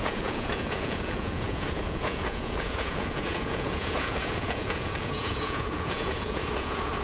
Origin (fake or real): fake